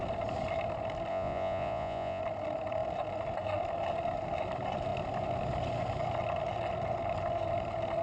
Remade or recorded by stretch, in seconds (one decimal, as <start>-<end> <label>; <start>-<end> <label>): 0.0-1.1 recorded; 1.1-2.2 remade; 2.2-8.0 recorded